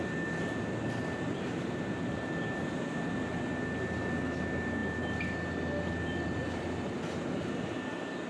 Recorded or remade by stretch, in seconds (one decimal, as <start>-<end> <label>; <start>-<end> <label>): 0.0-8.3 recorded